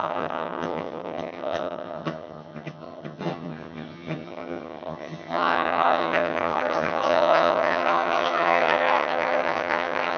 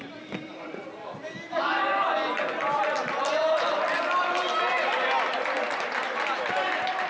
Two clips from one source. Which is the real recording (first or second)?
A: second